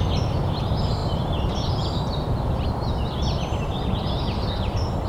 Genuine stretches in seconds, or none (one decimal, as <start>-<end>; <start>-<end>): 0.0-5.1